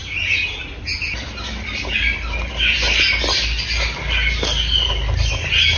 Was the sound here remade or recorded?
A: recorded